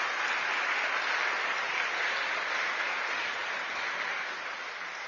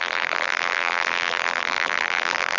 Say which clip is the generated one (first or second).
second